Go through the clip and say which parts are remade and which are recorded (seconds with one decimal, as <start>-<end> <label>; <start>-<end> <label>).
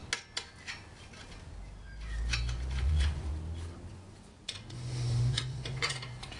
0.0-2.8 recorded; 2.8-3.3 remade; 3.3-3.9 recorded; 3.9-6.4 remade